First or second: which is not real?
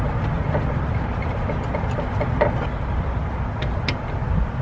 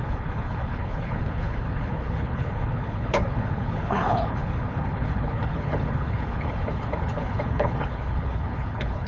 second